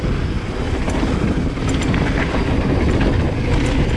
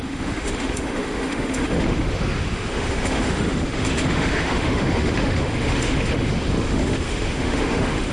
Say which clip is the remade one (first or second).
second